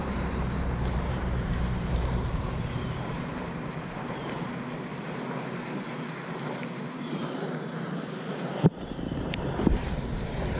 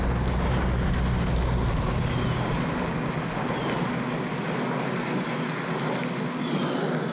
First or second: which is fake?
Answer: first